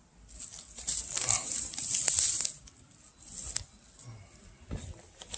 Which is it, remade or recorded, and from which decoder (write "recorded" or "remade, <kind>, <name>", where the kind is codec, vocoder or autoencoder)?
recorded